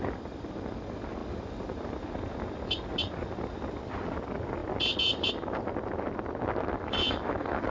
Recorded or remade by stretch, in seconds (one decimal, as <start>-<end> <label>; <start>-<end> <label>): 0.0-7.0 recorded; 7.0-7.7 remade

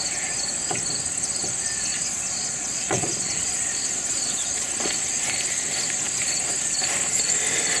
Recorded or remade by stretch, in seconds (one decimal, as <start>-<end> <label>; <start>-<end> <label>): 0.0-1.9 recorded; 1.9-4.7 remade; 4.7-7.8 recorded